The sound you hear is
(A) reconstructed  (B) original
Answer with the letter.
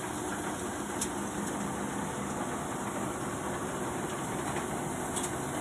B